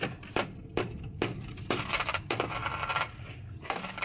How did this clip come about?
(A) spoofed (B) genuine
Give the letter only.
B